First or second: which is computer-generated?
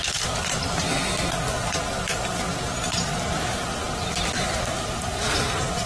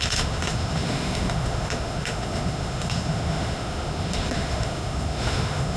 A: second